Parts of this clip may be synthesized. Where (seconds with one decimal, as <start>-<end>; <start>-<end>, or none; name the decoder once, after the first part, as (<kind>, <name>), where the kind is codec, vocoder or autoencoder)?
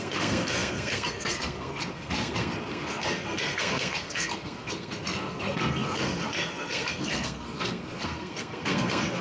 0.0-9.2 (codec, SNAC)